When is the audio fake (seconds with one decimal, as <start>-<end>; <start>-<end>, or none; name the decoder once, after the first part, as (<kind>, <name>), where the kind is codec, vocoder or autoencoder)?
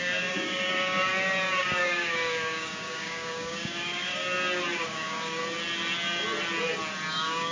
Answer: 0.0-1.1 (codec, DAC); 1.6-4.2; 4.8-5.4; 7.1-7.5